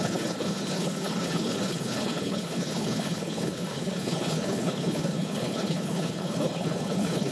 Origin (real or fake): fake